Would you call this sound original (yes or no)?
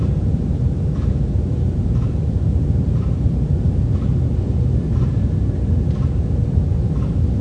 no